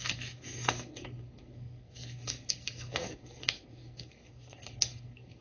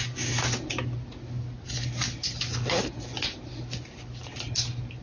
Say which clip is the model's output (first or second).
first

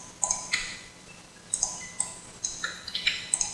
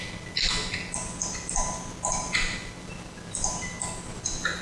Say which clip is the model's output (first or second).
first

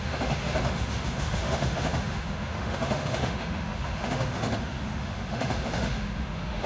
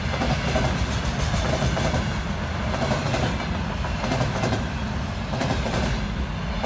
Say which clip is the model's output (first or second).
first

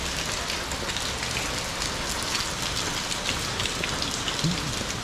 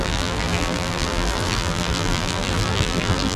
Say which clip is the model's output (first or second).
second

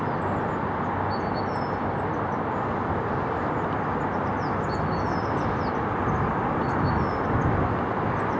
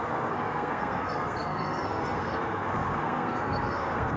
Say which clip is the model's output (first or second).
second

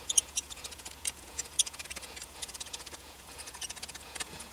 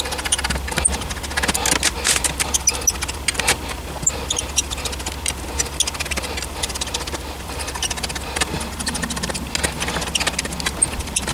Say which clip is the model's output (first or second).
first